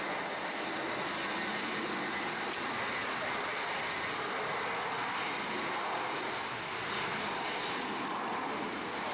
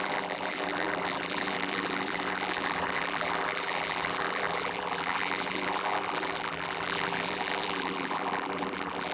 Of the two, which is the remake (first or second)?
second